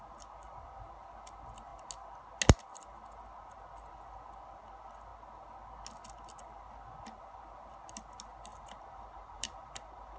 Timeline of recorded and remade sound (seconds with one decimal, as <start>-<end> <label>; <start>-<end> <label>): 0.0-8.5 recorded; 8.5-10.2 remade